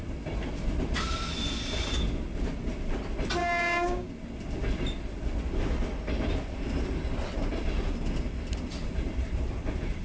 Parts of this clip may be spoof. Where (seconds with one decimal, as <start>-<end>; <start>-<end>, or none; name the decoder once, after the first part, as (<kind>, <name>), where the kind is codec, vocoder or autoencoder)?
3.4-4.1 (codec, DAC)